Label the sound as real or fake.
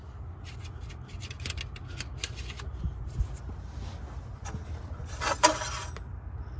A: real